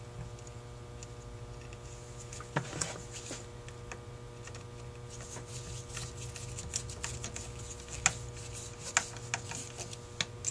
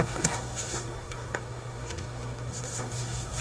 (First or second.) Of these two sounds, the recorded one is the first